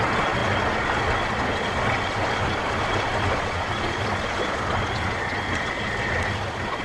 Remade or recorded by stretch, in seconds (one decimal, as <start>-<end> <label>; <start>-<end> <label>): 0.0-6.8 remade